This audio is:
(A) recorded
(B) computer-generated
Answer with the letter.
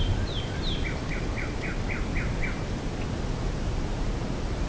A